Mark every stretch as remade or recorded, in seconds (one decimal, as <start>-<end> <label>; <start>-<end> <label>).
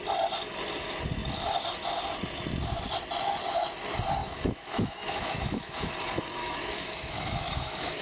0.0-4.2 recorded; 4.2-5.9 remade; 5.9-6.4 recorded; 6.4-8.0 remade